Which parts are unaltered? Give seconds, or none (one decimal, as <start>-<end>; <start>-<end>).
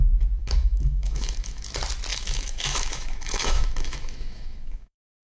0.0-0.4; 1.7-2.1